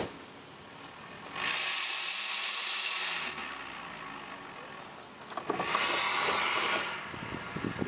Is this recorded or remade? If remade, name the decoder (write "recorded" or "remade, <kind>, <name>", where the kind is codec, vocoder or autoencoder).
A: recorded